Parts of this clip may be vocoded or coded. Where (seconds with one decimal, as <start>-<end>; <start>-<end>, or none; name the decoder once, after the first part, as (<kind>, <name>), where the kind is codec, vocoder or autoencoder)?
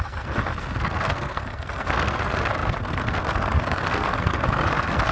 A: 0.0-5.1 (codec, SNAC)